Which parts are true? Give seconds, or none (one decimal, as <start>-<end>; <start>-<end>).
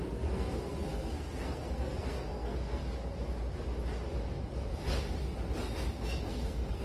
2.8-6.3